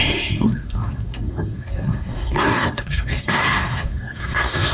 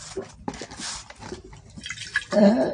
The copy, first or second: first